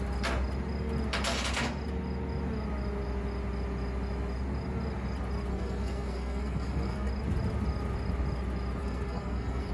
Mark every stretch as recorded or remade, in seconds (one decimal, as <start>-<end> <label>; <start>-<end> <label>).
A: 0.0-5.5 recorded; 5.5-7.1 remade; 7.1-8.8 recorded; 8.8-9.7 remade